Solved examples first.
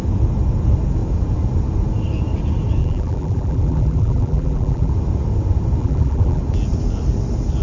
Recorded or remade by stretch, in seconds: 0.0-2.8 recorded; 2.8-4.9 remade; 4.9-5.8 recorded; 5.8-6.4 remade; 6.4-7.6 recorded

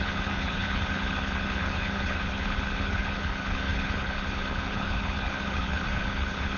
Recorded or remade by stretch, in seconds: 0.0-6.6 remade